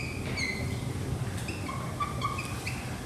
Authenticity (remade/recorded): recorded